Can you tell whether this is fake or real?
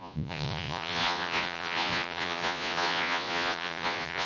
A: fake